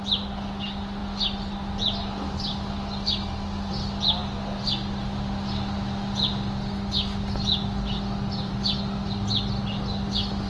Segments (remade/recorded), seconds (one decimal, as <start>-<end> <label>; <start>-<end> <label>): 0.0-10.5 recorded